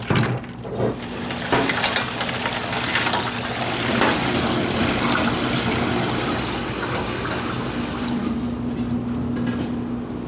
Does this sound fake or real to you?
real